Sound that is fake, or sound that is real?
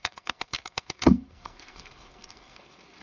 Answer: fake